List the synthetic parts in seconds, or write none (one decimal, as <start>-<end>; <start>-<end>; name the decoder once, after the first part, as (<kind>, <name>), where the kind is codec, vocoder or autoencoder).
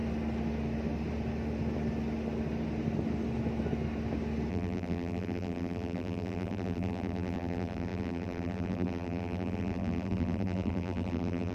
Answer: 4.5-11.5 (vocoder, BigVGAN v2)